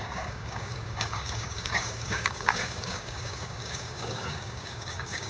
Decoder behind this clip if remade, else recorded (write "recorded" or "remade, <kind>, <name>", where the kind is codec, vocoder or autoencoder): remade, codec, DAC